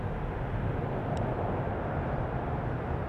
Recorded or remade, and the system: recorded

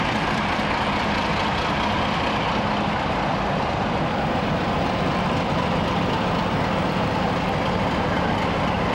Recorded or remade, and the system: recorded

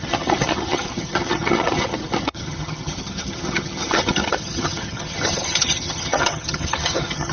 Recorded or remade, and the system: remade, vocoder, HiFi-GAN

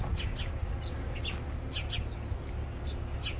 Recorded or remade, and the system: recorded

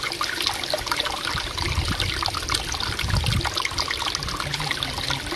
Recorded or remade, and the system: recorded